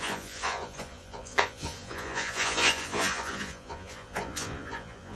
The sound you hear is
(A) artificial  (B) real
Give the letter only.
A